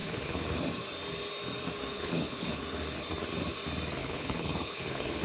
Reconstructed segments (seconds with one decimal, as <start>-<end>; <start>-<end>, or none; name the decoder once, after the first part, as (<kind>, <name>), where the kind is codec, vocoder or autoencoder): 0.0-0.6 (codec, HILCodec); 1.9-2.6; 4.0-5.2